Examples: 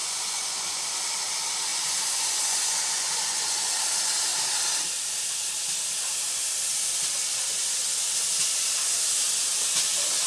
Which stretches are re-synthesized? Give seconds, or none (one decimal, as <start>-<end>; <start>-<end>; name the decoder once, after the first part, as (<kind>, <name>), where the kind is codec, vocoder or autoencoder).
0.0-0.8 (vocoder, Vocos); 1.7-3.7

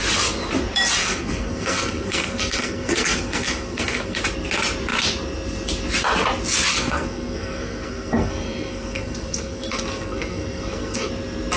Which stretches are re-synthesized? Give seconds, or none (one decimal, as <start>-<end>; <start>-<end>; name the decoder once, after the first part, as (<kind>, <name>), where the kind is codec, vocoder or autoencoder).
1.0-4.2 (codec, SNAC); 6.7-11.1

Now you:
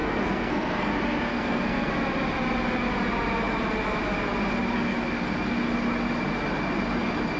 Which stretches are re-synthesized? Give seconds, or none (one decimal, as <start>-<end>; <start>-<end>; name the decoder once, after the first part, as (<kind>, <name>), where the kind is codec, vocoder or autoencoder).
0.0-0.9 (codec, SNAC); 1.3-1.9

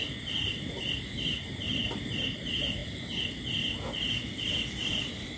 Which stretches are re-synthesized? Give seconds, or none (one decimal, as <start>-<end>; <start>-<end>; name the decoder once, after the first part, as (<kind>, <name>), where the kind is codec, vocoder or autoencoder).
0.0-2.8 (vocoder, BigVGAN v2); 4.7-5.4

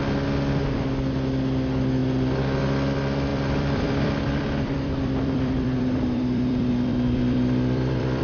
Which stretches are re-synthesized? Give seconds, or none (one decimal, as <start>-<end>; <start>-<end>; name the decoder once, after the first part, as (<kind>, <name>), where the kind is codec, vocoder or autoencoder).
3.3-8.2 (vocoder, BigVGAN v2)

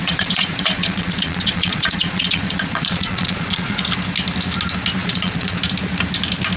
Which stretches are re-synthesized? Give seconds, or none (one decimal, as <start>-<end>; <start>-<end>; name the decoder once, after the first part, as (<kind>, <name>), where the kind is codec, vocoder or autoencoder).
0.0-3.8 (vocoder, Vocos); 5.0-5.6

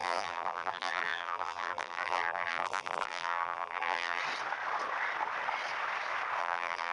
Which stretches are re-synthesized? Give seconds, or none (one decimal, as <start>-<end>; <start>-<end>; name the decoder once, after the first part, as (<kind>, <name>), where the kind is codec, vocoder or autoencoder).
0.0-4.2 (vocoder, BigVGAN v2); 6.4-6.9